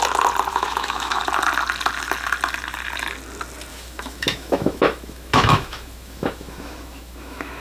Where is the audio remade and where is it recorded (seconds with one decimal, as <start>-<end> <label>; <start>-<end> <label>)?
0.0-0.5 recorded; 0.5-1.2 remade; 1.2-3.7 recorded; 3.7-7.6 remade

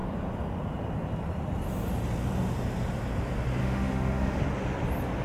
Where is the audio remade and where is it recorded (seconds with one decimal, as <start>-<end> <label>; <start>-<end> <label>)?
0.0-3.6 recorded; 3.6-4.4 remade; 4.4-5.2 recorded

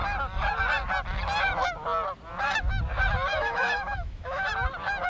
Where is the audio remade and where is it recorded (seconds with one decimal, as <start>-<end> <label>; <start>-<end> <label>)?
0.0-3.3 recorded; 3.3-4.5 remade; 4.5-5.1 recorded

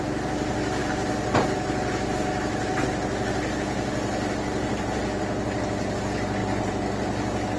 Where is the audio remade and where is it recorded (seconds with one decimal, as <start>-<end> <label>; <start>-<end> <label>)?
0.0-7.6 recorded

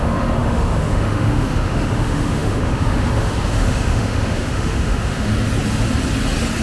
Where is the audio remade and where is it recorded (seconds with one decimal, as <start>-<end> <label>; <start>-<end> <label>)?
0.0-5.3 remade; 5.3-6.6 recorded

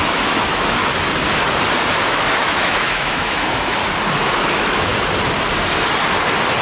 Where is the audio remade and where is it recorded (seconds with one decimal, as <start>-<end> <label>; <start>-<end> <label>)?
0.0-0.8 remade; 0.8-1.9 recorded; 1.9-3.8 remade; 3.8-4.5 recorded; 4.5-4.9 remade; 4.9-6.6 recorded

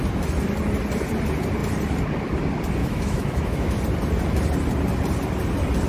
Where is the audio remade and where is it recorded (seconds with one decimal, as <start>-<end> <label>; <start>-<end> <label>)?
0.0-2.8 recorded; 2.8-3.8 remade; 3.8-5.9 recorded

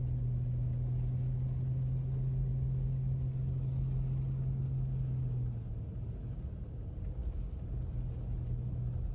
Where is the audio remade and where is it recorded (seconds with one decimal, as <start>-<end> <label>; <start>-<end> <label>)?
0.0-9.1 recorded